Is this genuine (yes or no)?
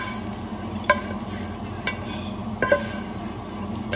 yes